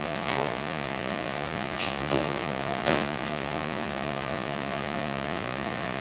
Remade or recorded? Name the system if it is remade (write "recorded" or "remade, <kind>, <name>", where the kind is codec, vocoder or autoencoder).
remade, vocoder, Vocos